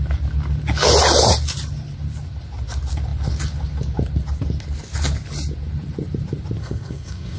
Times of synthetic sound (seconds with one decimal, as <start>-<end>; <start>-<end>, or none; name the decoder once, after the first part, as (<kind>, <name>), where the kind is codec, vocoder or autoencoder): 6.6-7.4 (codec, SNAC)